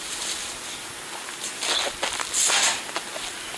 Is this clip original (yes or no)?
yes